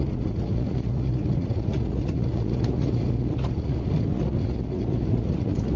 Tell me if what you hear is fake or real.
fake